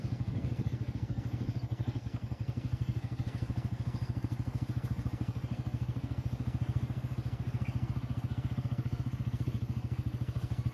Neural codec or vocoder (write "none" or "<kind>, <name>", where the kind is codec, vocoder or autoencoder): codec, SNAC